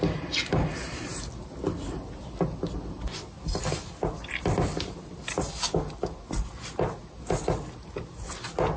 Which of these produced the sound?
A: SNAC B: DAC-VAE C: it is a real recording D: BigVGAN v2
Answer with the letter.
C